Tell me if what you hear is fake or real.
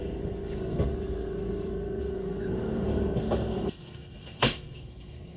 fake